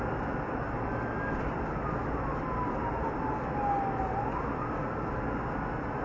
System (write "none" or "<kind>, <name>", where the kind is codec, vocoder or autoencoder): none